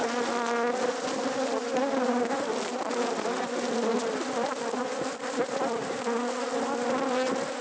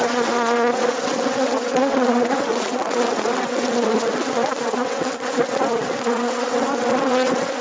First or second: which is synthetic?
second